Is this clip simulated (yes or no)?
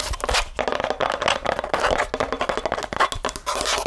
no